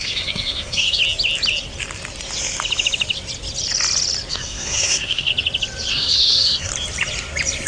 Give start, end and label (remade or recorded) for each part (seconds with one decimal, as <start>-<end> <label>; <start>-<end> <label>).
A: 0.0-1.0 remade; 1.0-4.3 recorded; 4.3-5.3 remade; 5.3-5.9 recorded; 5.9-6.7 remade; 6.7-7.7 recorded

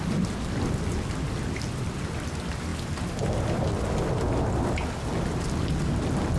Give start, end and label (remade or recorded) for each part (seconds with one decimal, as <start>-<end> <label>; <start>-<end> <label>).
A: 0.0-6.4 recorded

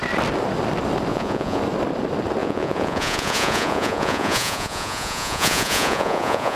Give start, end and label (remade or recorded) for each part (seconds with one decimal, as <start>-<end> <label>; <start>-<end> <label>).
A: 0.0-1.1 recorded; 1.1-1.6 remade; 1.6-2.4 recorded; 2.4-6.6 remade

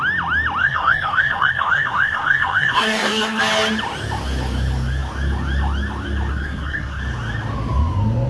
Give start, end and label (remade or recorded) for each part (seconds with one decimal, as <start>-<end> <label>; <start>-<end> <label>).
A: 0.0-0.6 recorded; 0.6-3.4 remade; 3.4-6.3 recorded; 6.3-7.0 remade; 7.0-8.3 recorded